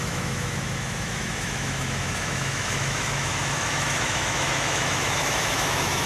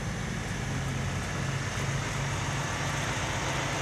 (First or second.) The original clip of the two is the second